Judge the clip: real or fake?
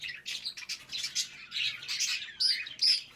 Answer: real